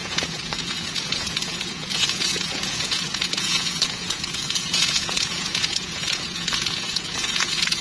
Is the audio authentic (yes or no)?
no